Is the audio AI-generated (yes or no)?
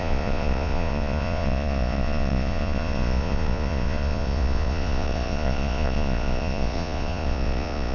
yes